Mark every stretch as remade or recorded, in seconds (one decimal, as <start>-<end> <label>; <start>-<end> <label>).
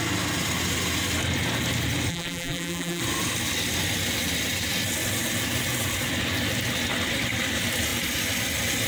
0.0-2.1 recorded; 2.1-3.0 remade; 3.0-8.9 recorded